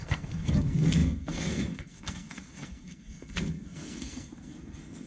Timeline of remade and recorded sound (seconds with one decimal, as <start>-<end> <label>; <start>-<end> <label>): 0.0-5.1 remade